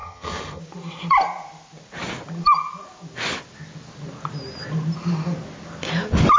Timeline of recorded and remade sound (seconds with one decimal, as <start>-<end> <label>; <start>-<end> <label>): 0.0-0.6 remade; 0.6-6.4 recorded